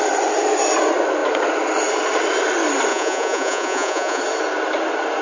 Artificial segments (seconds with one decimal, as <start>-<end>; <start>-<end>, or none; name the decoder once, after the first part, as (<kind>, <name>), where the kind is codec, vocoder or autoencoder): 2.9-4.2 (vocoder, Vocos)